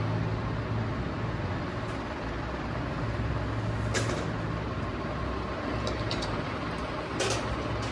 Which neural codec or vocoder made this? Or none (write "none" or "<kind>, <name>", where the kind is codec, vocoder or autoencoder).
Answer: none